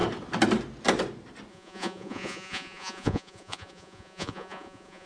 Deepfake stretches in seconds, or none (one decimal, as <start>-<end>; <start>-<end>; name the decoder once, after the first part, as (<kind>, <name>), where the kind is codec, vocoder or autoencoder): 1.5-5.1 (vocoder, Vocos)